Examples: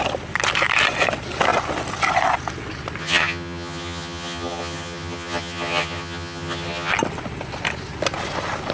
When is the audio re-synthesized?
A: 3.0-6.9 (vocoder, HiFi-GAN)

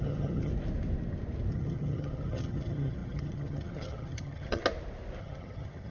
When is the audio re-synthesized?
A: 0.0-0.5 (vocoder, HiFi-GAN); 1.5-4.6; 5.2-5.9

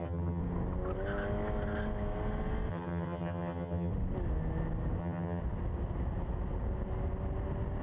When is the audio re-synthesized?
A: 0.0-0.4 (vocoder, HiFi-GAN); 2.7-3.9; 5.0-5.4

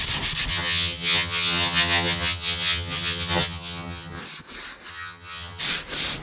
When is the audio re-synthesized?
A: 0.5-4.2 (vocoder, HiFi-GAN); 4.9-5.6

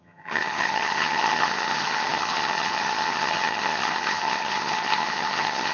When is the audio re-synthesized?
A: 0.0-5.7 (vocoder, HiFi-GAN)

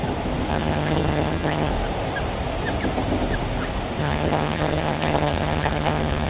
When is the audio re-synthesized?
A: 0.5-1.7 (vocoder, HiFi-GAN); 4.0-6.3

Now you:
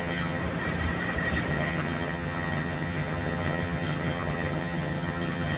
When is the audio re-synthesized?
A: 0.0-0.4 (vocoder, HiFi-GAN); 1.5-5.6